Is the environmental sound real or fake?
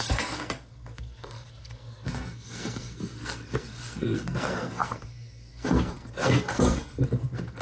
fake